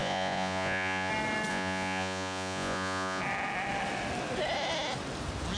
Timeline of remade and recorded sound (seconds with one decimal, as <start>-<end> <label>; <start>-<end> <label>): 0.0-1.1 remade; 1.1-1.5 recorded; 1.5-3.2 remade; 3.2-5.6 recorded